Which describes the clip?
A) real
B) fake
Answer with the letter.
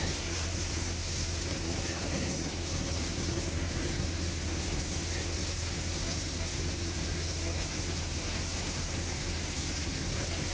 B